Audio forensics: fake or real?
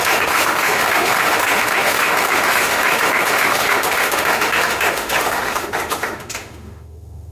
fake